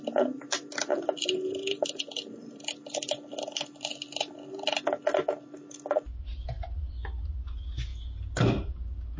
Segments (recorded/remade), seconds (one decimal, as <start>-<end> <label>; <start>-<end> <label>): 0.0-0.9 recorded; 0.9-2.7 remade; 2.7-6.3 recorded; 6.3-6.9 remade; 6.9-9.2 recorded